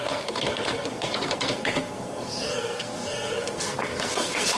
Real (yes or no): no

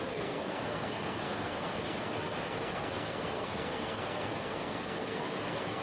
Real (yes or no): no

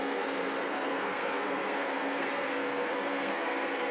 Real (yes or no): no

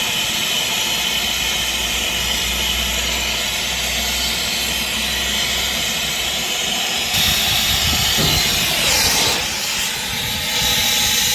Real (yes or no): yes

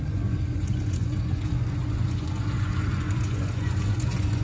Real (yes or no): no